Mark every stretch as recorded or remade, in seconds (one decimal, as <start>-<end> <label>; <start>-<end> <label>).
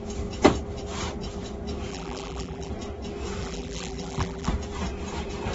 0.0-1.9 recorded; 1.9-2.7 remade; 2.7-3.4 recorded; 3.4-4.5 remade; 4.5-5.5 recorded